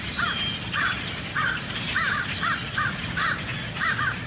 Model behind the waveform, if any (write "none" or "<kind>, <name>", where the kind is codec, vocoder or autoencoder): none